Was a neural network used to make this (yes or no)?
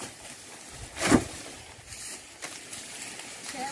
no